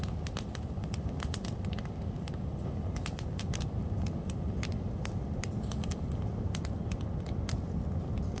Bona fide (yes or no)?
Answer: yes